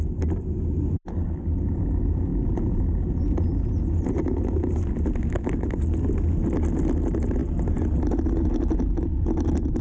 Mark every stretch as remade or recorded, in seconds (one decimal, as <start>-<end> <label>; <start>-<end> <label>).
0.0-9.8 recorded